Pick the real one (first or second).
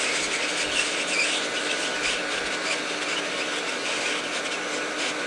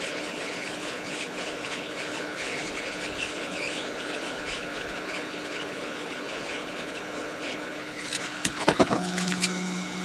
first